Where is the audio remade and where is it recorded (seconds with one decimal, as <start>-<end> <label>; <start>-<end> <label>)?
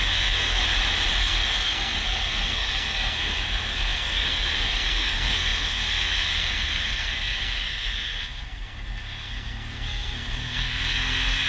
0.0-0.6 remade; 0.6-1.2 recorded; 1.2-11.5 remade